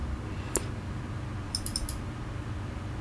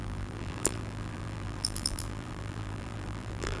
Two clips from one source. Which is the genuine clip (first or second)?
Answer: first